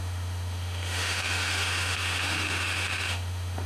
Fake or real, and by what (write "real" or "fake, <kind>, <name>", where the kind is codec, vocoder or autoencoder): fake, autoencoder, DAC-VAE